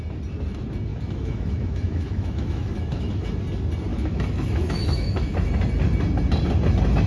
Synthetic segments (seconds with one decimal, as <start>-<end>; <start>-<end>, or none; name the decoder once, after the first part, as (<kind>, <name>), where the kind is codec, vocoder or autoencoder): 0.9-3.4 (autoencoder, DAC-VAE); 3.9-5.5